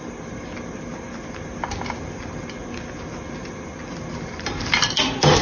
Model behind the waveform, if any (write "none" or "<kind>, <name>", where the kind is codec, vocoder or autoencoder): none